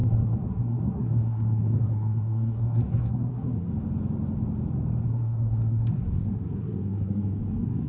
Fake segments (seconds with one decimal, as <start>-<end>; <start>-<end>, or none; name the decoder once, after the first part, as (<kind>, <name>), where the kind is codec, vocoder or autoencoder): 0.0-3.7 (codec, SNAC); 5.1-7.9